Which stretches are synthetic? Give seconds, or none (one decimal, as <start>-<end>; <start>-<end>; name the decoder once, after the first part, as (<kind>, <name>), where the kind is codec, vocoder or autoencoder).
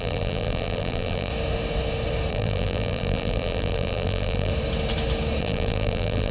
0.0-1.3 (vocoder, BigVGAN v2); 2.3-4.5; 5.4-6.3